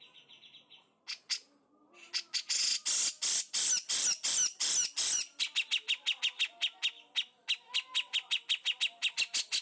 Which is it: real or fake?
real